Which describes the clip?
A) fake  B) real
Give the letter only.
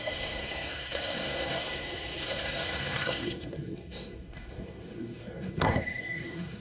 A